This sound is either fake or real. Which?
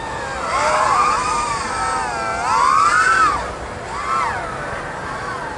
real